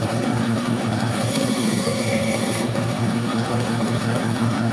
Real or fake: fake